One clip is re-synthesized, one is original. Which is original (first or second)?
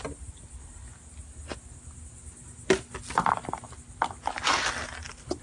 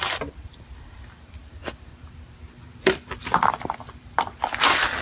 first